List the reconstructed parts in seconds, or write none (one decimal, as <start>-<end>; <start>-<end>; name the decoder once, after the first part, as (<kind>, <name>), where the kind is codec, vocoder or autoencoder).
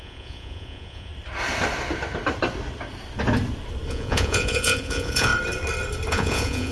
0.0-1.1 (vocoder, Vocos); 3.9-5.3; 6.1-6.7